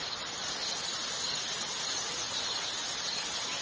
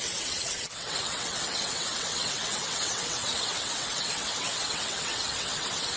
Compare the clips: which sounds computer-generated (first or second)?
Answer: second